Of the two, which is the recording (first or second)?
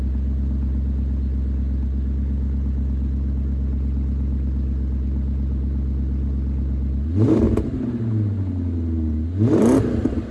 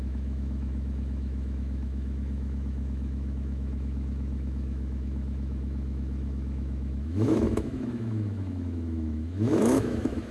first